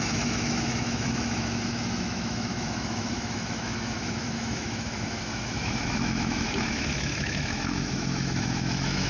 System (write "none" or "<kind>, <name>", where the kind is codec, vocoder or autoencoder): autoencoder, DAC-VAE